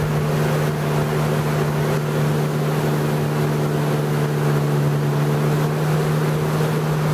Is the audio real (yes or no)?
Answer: yes